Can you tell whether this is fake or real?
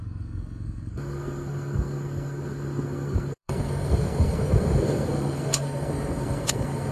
fake